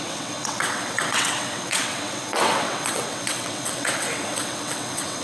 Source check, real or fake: fake